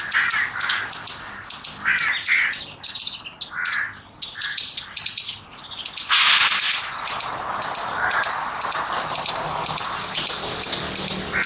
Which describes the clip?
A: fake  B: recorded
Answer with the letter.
B